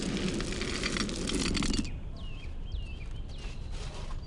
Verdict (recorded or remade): recorded